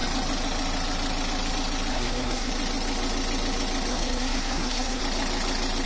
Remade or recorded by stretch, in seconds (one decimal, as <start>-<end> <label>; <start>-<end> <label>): 0.0-1.9 recorded; 1.9-2.5 remade; 2.5-3.9 recorded; 3.9-5.0 remade; 5.0-5.9 recorded